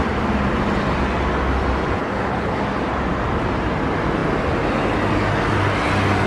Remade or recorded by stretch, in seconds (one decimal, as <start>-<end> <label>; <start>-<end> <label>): 0.0-2.0 recorded; 2.0-2.6 remade; 2.6-6.3 recorded